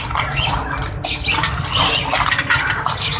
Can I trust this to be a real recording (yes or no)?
yes